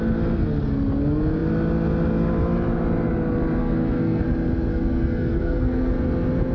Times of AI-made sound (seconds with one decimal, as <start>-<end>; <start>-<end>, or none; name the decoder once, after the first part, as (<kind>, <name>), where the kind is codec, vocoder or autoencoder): 3.6-4.2 (codec, SNAC); 4.7-5.9